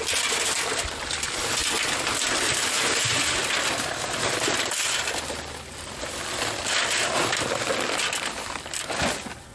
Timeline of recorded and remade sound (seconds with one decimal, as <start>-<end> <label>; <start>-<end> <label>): 0.0-9.5 recorded